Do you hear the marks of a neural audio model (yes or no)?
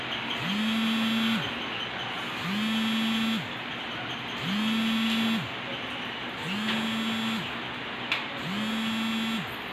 no